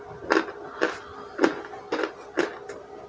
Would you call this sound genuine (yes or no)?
yes